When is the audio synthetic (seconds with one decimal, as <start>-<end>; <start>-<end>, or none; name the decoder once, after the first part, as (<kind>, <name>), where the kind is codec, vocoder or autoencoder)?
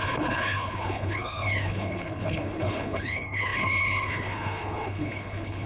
0.0-5.7 (codec, HILCodec)